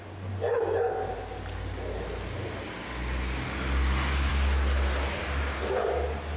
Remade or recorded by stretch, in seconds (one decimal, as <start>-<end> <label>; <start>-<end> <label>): 0.0-6.4 recorded